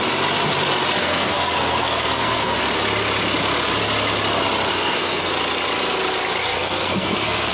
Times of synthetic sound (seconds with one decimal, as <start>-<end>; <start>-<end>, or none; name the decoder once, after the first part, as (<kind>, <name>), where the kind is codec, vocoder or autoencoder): 1.0-2.6 (codec, SNAC); 4.7-5.3; 6.4-7.5

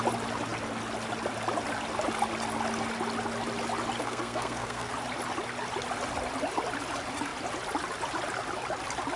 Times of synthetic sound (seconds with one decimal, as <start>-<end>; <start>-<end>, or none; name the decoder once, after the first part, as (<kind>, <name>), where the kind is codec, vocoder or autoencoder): 4.0-4.9 (codec, SNAC)

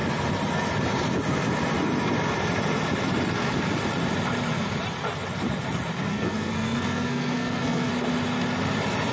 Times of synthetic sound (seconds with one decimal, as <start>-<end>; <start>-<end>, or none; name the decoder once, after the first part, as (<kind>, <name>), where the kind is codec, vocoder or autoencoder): 6.1-7.9 (codec, SNAC)